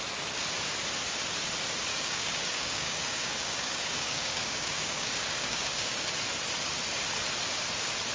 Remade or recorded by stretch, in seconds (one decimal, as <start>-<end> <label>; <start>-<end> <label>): 0.0-1.9 recorded; 1.9-6.1 remade; 6.1-8.1 recorded